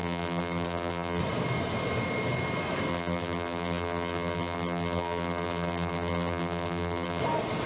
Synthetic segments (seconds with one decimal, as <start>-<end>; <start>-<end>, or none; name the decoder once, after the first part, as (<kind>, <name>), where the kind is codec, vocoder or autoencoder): 0.0-1.2 (vocoder, BigVGAN v2); 2.9-7.2